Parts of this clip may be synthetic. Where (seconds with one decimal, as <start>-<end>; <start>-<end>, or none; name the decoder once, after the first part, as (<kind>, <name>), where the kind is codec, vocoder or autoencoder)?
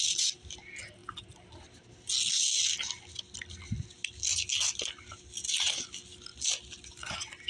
none